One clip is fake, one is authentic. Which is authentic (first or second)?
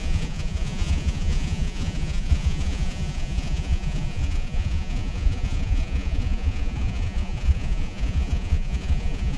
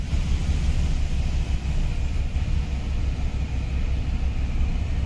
second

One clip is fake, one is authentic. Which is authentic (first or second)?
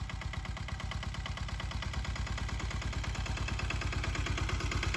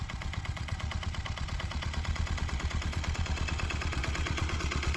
first